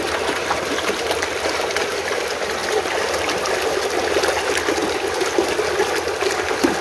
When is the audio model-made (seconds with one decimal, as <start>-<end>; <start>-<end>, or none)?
none

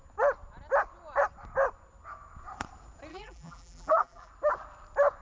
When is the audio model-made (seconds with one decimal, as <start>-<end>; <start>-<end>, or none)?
3.1-4.3

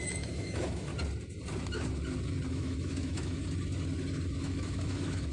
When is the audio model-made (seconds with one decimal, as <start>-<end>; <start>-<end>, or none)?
0.0-0.9; 2.5-3.4; 4.4-5.3

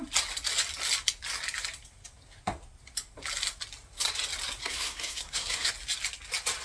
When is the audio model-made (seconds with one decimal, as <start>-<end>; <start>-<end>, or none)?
4.6-5.7